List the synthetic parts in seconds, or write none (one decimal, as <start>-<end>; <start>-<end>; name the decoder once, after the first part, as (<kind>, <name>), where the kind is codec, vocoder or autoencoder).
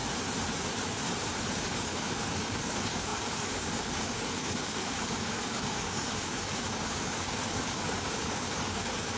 1.5-9.2 (codec, DAC)